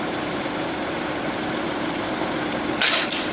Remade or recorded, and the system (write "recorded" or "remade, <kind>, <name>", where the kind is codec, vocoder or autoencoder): remade, vocoder, BigVGAN v2